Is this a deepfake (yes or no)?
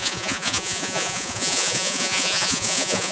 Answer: yes